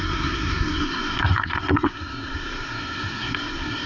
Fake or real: fake